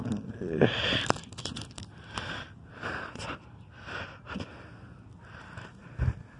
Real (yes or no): yes